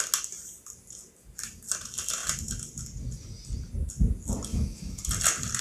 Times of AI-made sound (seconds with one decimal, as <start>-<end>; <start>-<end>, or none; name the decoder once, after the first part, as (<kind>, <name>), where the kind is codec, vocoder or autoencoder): 4.5-5.0 (autoencoder, DAC-VAE)

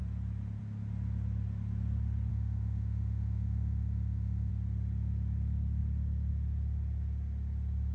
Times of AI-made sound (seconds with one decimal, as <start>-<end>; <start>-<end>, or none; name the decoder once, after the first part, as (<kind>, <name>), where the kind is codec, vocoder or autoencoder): 2.3-4.5 (autoencoder, DAC-VAE)

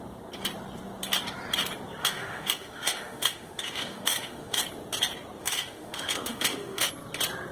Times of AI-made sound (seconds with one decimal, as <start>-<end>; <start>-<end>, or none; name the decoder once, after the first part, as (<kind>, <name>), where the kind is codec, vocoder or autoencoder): 2.0-4.6 (autoencoder, DAC-VAE); 5.4-6.9

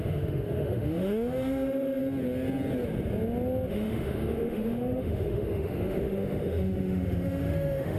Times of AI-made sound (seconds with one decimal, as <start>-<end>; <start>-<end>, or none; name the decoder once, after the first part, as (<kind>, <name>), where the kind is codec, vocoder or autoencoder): 0.0-2.0 (autoencoder, DAC-VAE); 3.7-8.0

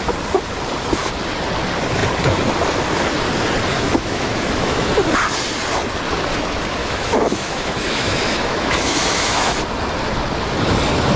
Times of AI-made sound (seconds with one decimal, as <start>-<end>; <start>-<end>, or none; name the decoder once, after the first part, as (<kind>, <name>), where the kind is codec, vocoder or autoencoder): 3.7-4.9 (autoencoder, DAC-VAE); 6.8-9.6

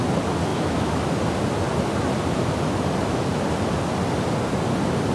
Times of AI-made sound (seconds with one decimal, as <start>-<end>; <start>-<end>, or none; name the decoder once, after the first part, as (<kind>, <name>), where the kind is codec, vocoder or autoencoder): 0.5-1.1 (autoencoder, DAC-VAE)

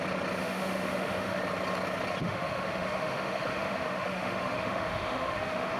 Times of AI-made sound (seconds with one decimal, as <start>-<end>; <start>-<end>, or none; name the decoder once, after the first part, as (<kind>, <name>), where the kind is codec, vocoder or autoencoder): 0.4-1.4 (autoencoder, DAC-VAE); 2.2-5.8